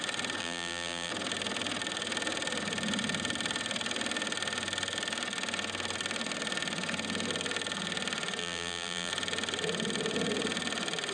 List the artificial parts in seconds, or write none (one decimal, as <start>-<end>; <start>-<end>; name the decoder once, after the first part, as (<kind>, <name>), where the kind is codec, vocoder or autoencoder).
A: 0.4-1.1 (vocoder, BigVGAN v2); 8.4-9.1